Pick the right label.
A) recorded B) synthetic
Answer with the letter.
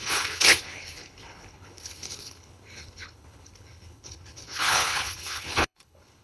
B